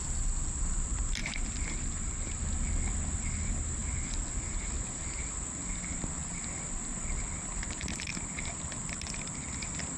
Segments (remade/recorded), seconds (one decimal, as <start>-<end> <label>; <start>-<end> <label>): 0.0-10.0 recorded